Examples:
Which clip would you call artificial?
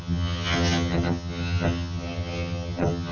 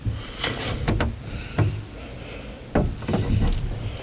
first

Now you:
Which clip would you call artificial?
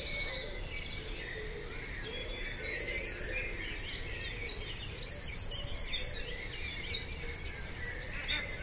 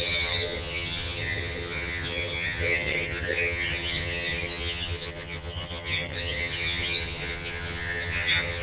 second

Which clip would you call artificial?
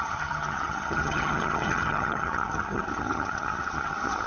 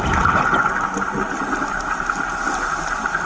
first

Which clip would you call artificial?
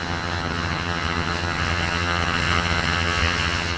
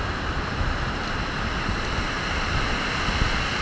first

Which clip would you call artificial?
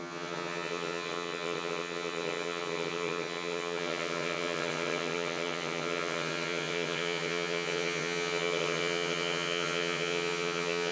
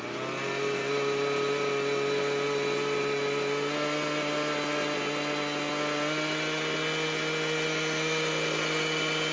first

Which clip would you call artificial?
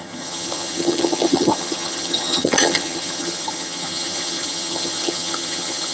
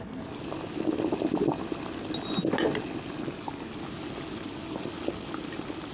first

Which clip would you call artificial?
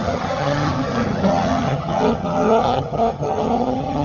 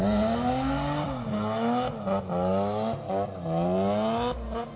first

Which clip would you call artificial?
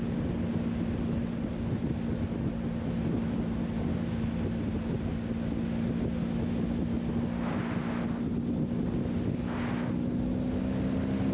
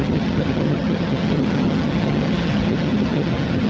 second